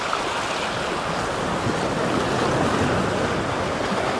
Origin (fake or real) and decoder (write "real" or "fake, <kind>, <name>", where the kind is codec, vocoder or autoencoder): real